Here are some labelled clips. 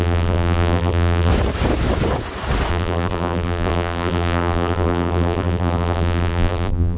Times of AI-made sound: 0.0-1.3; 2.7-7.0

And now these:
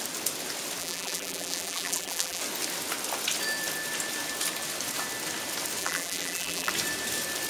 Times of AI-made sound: 0.8-2.4; 5.8-6.7

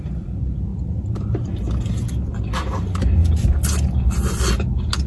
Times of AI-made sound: 0.7-1.5

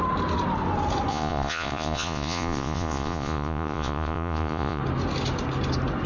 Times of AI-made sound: 1.1-4.8

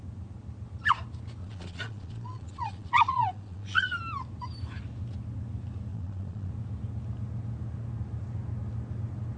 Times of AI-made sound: 1.4-4.0; 5.9-6.5

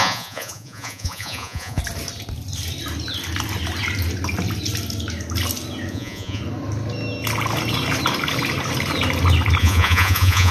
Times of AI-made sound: 0.0-1.8; 5.9-6.4; 9.6-10.5